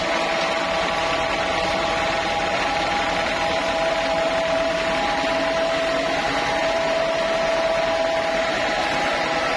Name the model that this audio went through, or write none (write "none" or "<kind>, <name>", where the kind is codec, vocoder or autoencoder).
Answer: none